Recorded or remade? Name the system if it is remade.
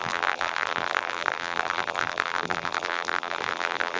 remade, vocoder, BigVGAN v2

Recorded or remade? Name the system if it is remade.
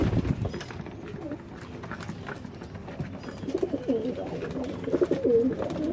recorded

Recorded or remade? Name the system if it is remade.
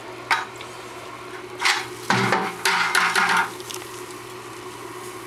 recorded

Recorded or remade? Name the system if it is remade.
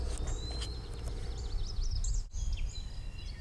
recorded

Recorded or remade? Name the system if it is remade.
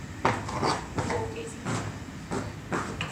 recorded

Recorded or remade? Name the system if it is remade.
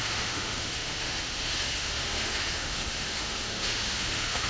remade, autoencoder, DAC-VAE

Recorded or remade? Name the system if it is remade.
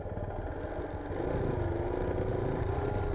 recorded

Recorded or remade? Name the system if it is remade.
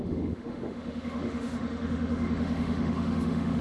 remade, autoencoder, DAC-VAE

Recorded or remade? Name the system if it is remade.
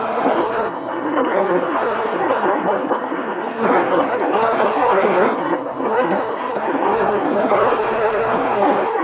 remade, codec, SNAC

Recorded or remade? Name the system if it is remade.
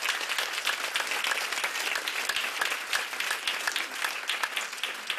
recorded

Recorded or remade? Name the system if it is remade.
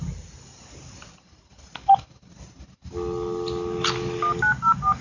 recorded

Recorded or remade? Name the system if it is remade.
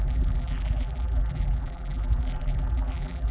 remade, vocoder, BigVGAN v2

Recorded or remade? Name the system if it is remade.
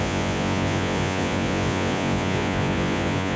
remade, vocoder, Vocos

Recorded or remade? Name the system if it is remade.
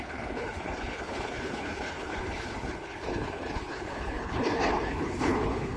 remade, codec, HILCodec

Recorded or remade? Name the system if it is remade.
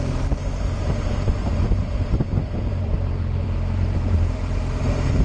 remade, vocoder, BigVGAN v2